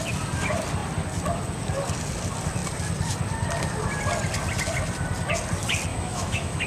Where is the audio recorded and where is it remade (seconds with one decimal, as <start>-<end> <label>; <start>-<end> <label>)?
0.0-5.9 recorded; 5.9-6.7 remade